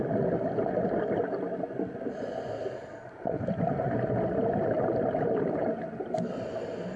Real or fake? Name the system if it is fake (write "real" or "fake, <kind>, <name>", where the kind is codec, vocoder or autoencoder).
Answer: real